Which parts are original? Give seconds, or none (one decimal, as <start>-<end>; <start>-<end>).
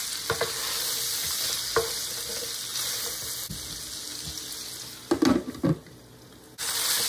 0.0-7.1